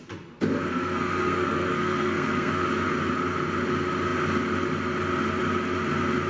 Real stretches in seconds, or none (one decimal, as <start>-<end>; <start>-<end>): 0.0-0.7; 2.5-6.3